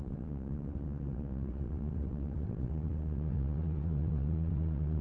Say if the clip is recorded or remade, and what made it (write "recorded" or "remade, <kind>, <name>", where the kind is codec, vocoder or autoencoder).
remade, vocoder, WaveNeXt